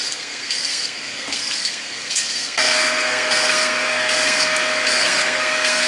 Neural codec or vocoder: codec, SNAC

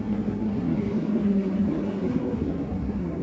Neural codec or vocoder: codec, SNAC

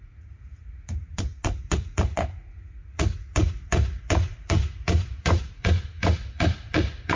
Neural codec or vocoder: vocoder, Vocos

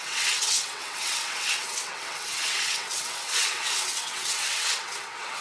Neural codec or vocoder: vocoder, WaveNeXt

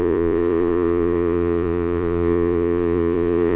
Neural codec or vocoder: vocoder, Vocos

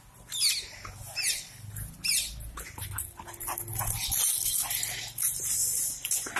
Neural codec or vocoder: none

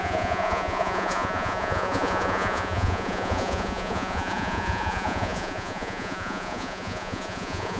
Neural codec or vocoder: vocoder, Vocos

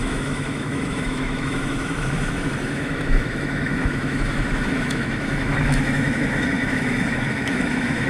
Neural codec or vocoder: autoencoder, DAC-VAE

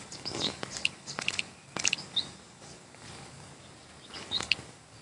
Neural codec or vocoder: codec, DAC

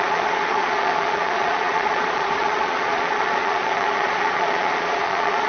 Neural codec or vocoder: vocoder, Vocos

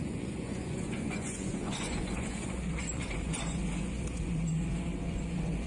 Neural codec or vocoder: vocoder, Vocos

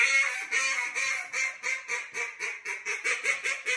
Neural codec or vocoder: none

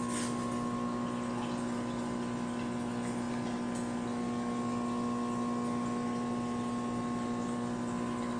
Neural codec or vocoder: none